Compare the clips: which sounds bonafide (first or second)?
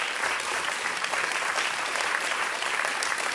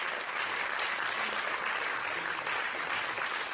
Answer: second